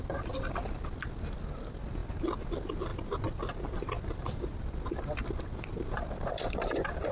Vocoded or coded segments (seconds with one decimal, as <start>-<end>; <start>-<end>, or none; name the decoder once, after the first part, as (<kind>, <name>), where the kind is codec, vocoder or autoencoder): none